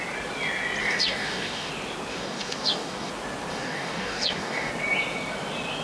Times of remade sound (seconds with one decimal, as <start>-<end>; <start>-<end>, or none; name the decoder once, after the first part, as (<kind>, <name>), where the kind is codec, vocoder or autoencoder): 0.8-1.7 (codec, DAC); 2.1-3.1; 3.5-4.7